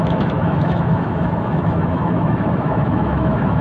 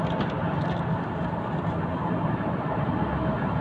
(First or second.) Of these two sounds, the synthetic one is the first